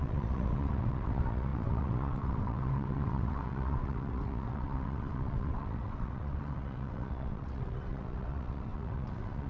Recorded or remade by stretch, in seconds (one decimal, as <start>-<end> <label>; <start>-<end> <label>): 0.0-9.5 remade